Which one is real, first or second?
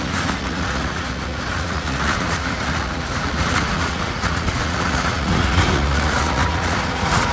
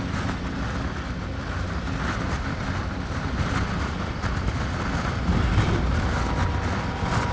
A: second